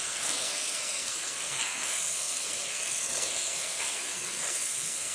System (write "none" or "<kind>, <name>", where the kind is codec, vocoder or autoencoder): codec, SNAC